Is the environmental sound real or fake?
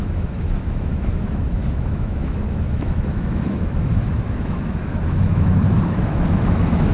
fake